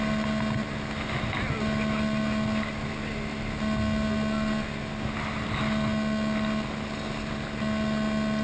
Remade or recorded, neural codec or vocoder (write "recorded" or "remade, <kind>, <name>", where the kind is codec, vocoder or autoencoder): recorded